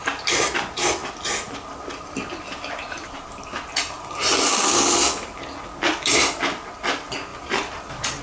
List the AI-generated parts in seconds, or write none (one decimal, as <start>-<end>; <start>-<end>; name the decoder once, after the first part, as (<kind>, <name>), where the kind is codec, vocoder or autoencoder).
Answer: 7.3-8.2 (vocoder, BigVGAN v2)